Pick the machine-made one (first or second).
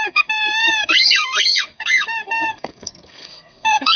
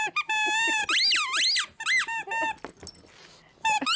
first